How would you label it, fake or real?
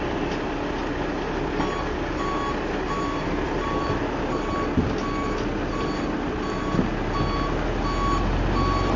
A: real